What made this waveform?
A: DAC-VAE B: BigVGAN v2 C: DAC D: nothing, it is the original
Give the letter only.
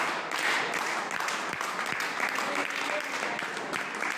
D